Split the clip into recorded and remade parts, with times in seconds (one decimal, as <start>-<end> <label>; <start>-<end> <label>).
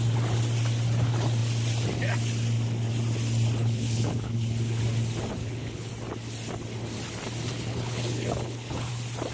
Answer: 0.0-3.6 recorded; 3.6-4.8 remade; 4.8-5.4 recorded; 5.4-5.9 remade; 5.9-7.7 recorded; 7.7-8.9 remade; 8.9-9.3 recorded